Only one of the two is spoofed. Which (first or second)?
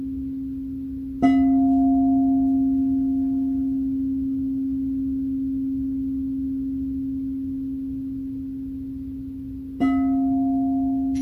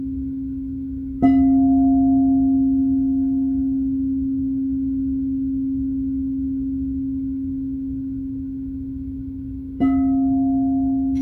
second